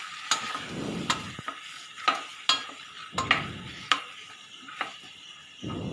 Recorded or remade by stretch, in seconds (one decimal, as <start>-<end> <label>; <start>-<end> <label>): 0.0-5.9 recorded